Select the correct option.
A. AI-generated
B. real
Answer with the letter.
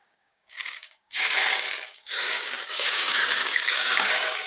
A